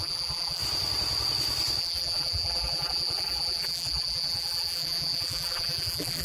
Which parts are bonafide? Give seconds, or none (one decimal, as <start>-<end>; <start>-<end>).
0.6-1.8